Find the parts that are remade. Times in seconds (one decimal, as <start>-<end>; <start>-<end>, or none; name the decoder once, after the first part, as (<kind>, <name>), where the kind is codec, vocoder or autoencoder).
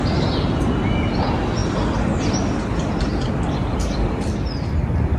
none